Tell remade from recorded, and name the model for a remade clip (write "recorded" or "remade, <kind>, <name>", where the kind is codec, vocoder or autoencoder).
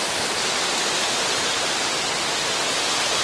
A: recorded